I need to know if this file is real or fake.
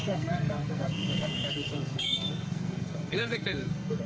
fake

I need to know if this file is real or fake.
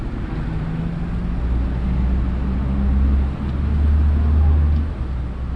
real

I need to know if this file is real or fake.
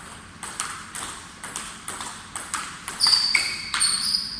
fake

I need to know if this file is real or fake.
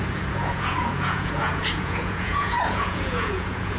fake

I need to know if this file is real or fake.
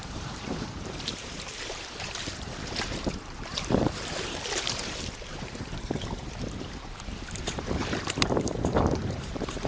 fake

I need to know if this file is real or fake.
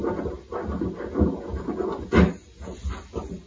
real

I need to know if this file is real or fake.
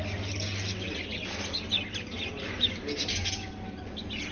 real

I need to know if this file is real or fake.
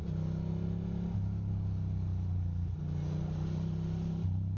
real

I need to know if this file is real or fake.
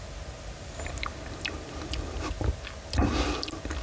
real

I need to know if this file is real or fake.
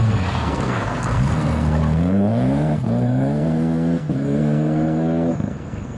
fake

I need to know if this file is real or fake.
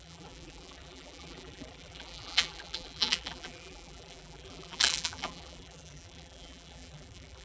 fake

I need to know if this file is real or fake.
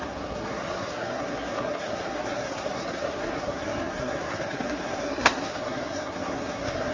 fake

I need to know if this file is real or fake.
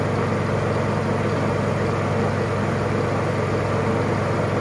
real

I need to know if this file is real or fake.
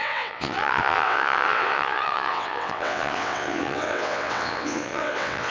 fake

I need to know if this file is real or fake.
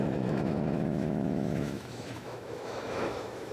fake